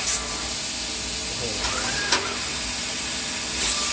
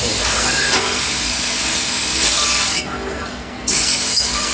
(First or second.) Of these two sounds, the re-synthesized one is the second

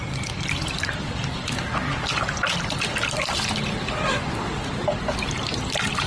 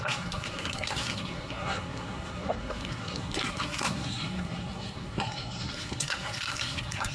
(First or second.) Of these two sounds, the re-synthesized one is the second